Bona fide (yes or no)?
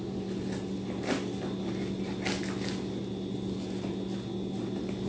yes